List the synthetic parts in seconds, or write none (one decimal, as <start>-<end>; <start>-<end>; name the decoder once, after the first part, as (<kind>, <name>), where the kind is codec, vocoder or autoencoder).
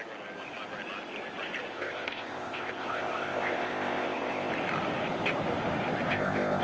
1.7-4.5 (codec, ZipCodec); 6.1-6.6